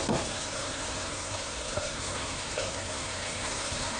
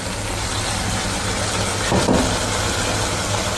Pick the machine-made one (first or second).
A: first